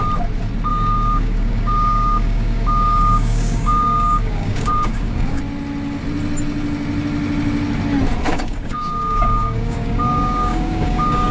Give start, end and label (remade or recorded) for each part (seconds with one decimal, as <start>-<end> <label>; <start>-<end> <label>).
0.0-0.7 recorded; 0.7-5.4 remade; 5.4-8.3 recorded; 8.3-11.3 remade